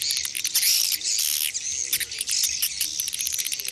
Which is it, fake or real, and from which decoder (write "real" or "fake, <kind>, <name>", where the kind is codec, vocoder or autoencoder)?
real